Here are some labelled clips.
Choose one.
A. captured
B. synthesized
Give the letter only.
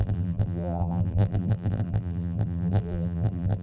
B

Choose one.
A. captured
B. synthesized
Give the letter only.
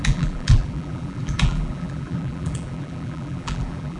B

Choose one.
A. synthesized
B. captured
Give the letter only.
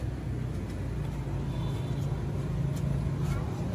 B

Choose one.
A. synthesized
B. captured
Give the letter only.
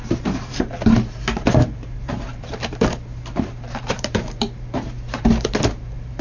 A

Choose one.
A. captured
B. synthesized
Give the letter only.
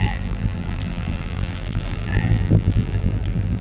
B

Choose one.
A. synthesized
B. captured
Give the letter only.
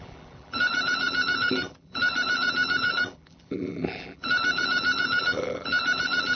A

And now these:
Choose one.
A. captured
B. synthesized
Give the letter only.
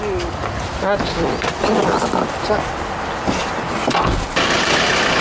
A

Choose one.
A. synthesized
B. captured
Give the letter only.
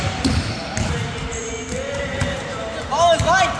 B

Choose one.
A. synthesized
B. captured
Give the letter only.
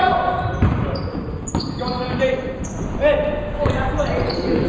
A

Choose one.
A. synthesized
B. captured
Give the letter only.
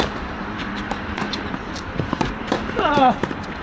A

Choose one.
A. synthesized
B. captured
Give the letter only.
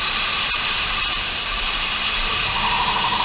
A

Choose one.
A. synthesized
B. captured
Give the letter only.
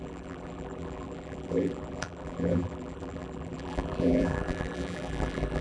A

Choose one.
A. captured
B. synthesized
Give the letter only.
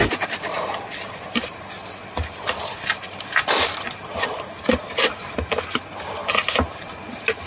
A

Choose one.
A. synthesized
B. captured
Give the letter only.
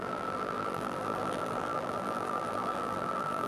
A